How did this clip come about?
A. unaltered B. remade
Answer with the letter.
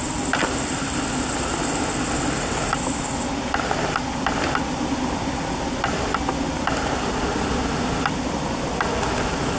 A